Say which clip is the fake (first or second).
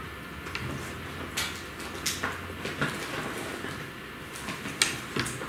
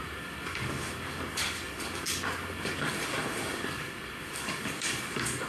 second